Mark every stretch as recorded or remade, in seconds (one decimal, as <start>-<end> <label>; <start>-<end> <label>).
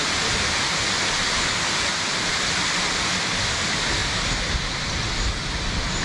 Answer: 0.0-6.0 recorded